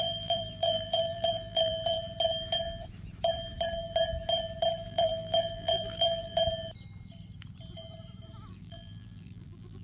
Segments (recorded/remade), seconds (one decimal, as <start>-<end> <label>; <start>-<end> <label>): 0.0-1.7 remade; 1.7-4.7 recorded; 4.7-6.3 remade; 6.3-8.5 recorded; 8.5-9.8 remade